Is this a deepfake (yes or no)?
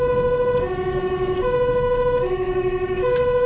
yes